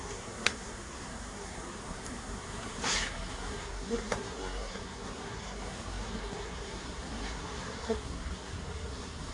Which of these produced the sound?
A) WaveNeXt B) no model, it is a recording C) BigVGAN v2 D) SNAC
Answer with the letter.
D